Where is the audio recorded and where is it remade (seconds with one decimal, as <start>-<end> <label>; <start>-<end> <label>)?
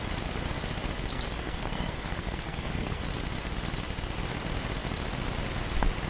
0.0-1.1 recorded; 1.1-3.0 remade; 3.0-6.1 recorded